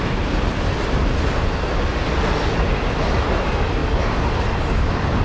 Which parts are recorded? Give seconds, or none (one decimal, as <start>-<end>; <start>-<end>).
0.0-5.2